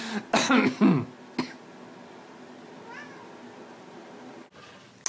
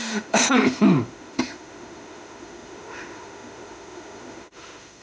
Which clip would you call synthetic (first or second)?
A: second